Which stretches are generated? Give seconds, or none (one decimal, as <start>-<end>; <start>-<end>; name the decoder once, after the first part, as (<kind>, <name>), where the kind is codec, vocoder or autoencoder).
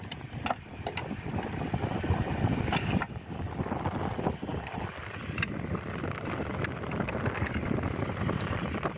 none